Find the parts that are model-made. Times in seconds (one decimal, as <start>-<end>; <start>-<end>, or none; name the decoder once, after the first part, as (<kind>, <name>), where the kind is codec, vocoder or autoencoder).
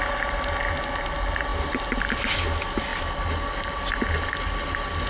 none